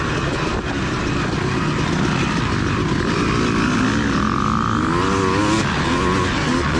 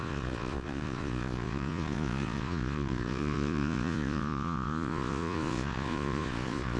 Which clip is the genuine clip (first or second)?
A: first